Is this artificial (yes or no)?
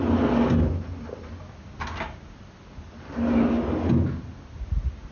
no